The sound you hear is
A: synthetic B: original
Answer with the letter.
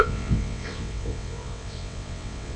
A